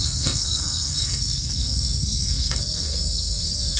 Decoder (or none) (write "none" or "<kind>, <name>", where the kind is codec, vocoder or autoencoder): codec, SNAC